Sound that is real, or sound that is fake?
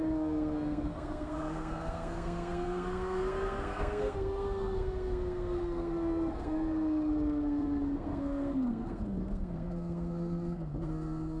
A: fake